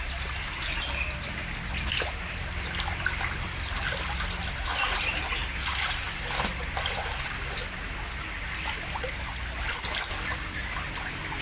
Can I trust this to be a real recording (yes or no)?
yes